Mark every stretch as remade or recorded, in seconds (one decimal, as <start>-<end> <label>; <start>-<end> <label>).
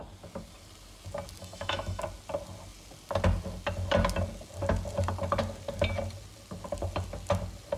0.0-1.4 recorded; 1.4-2.0 remade; 2.0-7.8 recorded